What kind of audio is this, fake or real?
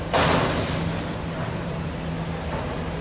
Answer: real